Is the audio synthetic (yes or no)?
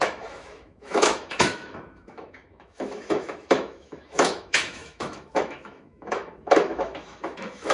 yes